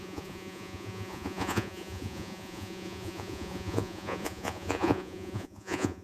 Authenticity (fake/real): fake